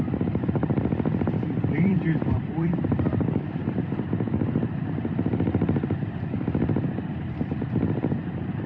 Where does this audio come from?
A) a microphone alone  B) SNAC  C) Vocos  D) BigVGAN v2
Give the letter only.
D